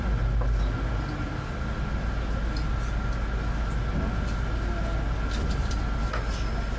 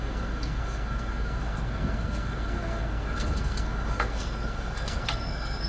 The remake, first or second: second